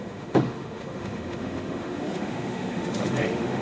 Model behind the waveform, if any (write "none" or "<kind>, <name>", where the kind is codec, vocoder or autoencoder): autoencoder, DAC-VAE